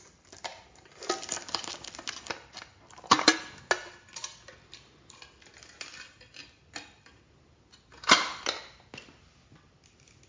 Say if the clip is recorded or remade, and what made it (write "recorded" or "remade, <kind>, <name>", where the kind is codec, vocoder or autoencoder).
recorded